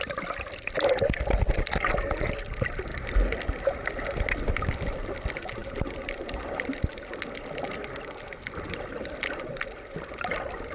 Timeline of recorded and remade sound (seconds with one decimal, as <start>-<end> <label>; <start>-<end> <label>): 0.0-5.6 recorded; 5.6-9.1 remade; 9.1-10.7 recorded